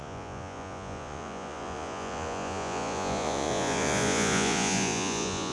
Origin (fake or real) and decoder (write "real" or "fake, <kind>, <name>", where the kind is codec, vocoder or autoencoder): fake, vocoder, Vocos